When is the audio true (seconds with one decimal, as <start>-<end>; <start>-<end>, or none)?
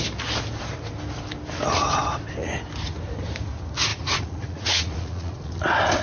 0.0-3.9; 5.5-6.0